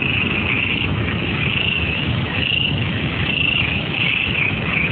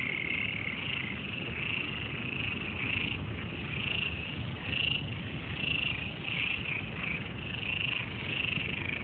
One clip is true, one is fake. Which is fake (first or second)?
first